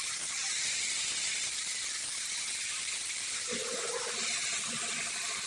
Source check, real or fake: real